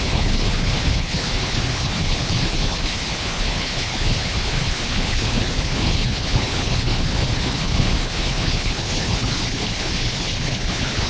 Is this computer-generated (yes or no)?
yes